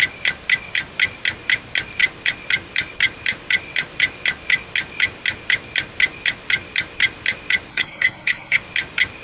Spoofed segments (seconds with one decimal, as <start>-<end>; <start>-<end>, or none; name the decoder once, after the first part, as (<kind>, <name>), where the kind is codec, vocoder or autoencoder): 7.7-8.6 (codec, SNAC)